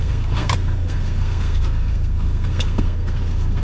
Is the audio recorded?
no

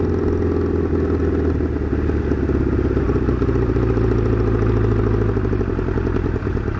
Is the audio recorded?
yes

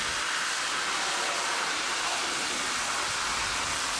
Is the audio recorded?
yes